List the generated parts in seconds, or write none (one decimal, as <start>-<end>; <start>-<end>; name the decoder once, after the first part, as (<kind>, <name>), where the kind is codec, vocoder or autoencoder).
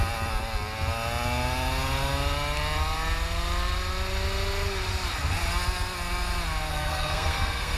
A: 6.7-7.8 (codec, SNAC)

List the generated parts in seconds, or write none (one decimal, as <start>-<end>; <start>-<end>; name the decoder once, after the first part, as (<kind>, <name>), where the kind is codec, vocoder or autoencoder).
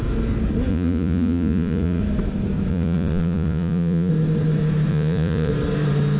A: 0.7-2.0 (vocoder, Vocos); 2.7-4.1; 4.9-5.5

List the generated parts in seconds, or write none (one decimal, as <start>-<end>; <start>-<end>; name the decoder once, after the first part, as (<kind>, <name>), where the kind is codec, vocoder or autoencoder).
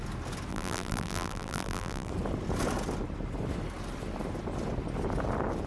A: 0.5-2.1 (vocoder, BigVGAN v2)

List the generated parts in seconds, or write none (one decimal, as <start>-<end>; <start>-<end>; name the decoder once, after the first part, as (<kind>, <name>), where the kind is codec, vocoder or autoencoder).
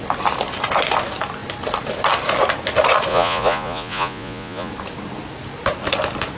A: 3.1-4.7 (vocoder, Vocos)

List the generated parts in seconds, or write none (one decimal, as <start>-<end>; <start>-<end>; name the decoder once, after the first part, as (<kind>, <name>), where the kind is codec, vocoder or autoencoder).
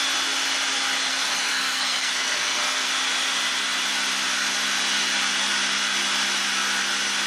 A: 1.1-2.9 (codec, SNAC)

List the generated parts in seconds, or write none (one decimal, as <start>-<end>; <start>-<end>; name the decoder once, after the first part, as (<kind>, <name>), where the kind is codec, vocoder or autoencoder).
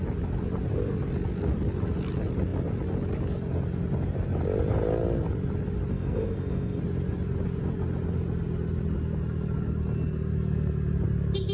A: 5.9-6.8 (codec, SNAC)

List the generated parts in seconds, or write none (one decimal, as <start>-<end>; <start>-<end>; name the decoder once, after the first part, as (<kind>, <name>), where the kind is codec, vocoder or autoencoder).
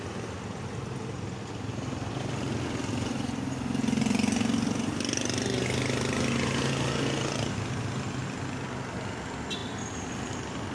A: none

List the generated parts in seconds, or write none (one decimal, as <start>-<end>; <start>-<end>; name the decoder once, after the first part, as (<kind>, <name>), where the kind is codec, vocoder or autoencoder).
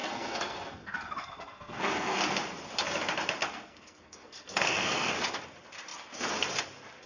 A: 0.0-2.2 (codec, SNAC); 3.4-5.1